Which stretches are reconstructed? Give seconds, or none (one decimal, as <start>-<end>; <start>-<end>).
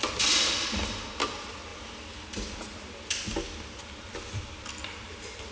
none